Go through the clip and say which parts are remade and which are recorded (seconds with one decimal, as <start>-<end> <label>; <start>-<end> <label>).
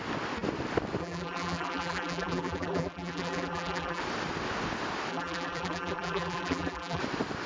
0.0-1.0 recorded; 1.0-4.0 remade; 4.0-5.1 recorded; 5.1-7.0 remade; 7.0-7.5 recorded